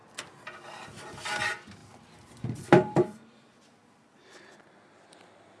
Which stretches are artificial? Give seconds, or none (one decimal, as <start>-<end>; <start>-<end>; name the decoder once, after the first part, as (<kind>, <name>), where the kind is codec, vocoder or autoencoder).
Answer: 0.0-1.4 (vocoder, BigVGAN v2); 1.8-5.6